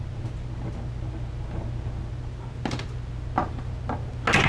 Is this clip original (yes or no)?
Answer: yes